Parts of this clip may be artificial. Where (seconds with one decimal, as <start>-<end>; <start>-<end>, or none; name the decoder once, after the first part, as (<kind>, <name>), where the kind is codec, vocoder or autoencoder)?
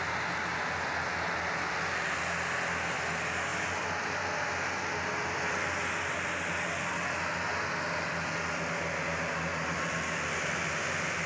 9.5-11.3 (vocoder, BigVGAN v2)